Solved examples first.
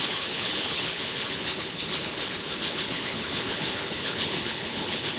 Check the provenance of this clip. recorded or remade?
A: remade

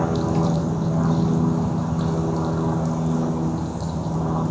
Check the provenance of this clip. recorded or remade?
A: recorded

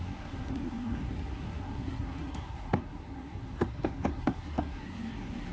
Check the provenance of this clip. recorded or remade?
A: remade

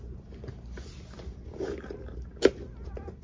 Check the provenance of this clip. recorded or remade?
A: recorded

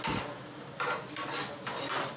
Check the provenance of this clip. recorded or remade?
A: recorded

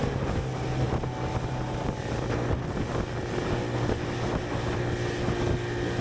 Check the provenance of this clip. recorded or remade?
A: recorded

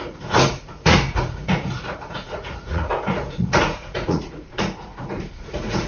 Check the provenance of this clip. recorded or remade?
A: remade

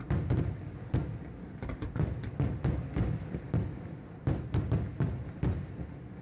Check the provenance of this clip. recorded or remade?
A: recorded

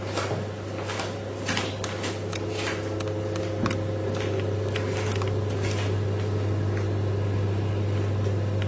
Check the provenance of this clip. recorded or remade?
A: recorded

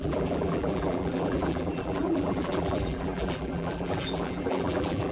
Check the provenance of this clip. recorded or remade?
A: remade